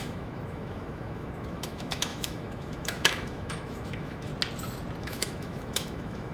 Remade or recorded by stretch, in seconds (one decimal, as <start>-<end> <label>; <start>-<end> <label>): 0.0-4.3 remade; 4.3-5.0 recorded; 5.0-6.3 remade